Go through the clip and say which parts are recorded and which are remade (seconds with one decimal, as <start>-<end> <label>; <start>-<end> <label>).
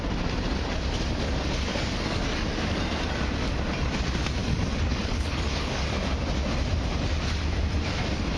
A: 0.0-1.7 recorded; 1.7-2.8 remade; 2.8-4.4 recorded; 4.4-5.9 remade; 5.9-8.4 recorded